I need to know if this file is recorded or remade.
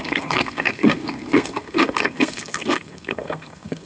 remade